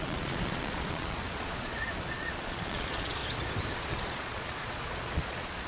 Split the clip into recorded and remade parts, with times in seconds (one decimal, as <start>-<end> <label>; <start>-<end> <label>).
0.0-3.2 remade; 3.2-3.9 recorded; 3.9-5.7 remade